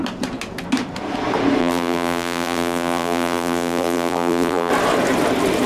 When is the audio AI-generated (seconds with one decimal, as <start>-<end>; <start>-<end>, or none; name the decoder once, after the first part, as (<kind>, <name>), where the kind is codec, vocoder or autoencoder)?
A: 1.6-4.7 (vocoder, BigVGAN v2)